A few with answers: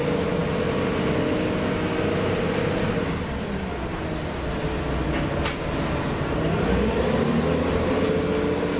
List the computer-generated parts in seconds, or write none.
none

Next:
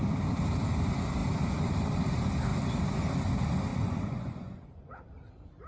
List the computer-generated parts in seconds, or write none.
3.7-4.9 (vocoder, Vocos)

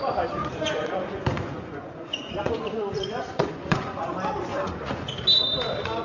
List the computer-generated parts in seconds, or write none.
0.4-4.0 (vocoder, Vocos); 4.5-5.2